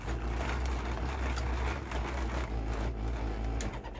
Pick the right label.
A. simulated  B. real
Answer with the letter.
B